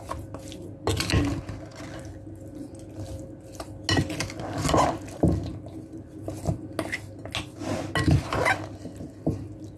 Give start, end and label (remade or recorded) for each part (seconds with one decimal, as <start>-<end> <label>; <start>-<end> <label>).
0.0-9.8 recorded